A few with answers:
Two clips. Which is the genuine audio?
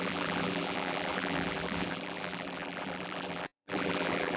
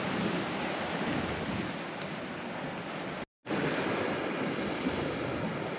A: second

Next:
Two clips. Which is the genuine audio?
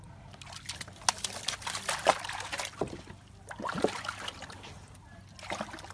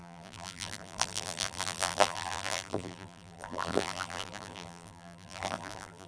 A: first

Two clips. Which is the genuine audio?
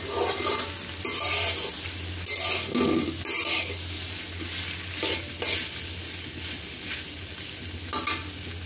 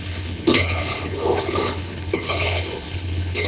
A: first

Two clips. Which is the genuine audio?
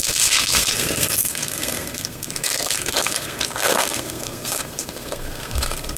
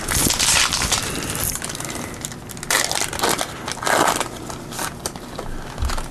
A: second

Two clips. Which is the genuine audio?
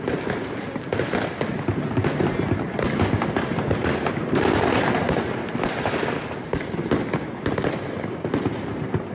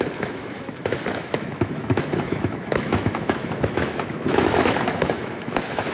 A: first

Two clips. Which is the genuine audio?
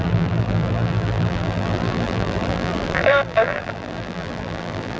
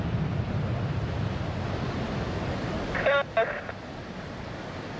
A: second